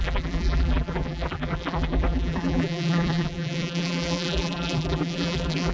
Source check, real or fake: fake